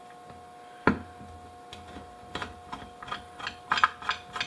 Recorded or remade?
recorded